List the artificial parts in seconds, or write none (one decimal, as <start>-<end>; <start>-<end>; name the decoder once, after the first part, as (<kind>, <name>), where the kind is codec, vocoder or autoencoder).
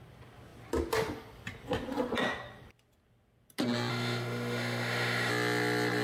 3.9-5.3 (autoencoder, DAC-VAE)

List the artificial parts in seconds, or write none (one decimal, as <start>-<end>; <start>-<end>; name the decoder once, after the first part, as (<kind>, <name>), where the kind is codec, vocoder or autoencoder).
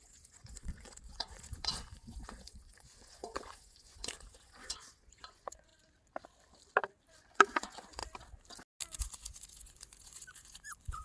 0.0-5.7 (vocoder, Vocos); 7.2-8.0; 9.0-11.0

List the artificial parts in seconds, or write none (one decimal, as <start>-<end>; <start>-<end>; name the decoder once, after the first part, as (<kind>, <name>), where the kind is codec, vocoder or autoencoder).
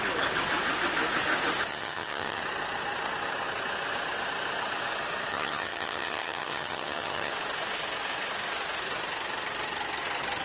1.7-2.4 (vocoder, HiFi-GAN); 5.3-7.3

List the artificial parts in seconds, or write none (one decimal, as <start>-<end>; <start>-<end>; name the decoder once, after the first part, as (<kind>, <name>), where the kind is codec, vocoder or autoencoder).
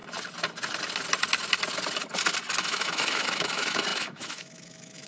2.6-5.1 (autoencoder, DAC-VAE)